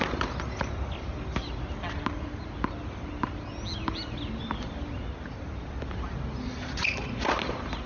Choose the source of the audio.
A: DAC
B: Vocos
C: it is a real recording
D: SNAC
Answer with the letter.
C